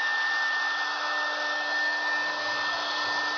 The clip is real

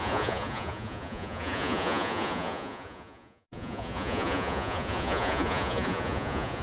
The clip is fake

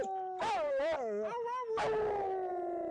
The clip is real